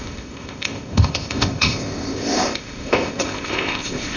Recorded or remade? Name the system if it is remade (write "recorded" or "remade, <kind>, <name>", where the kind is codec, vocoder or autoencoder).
remade, codec, ZipCodec